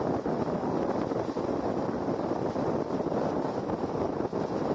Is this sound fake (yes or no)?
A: no